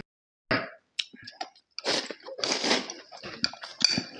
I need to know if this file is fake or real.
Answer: real